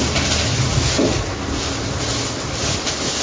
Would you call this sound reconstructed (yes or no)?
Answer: no